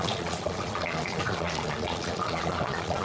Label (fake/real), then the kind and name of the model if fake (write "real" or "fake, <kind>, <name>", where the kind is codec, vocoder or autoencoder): fake, vocoder, Vocos